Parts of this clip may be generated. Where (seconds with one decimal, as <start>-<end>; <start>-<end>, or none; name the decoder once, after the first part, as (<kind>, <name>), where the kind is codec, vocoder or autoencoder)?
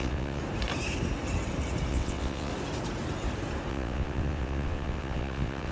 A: 0.0-0.4 (vocoder, WaveNeXt); 1.9-2.5; 3.7-5.7